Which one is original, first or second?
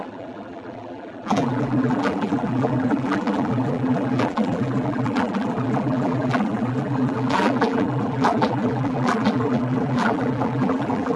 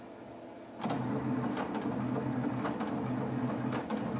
second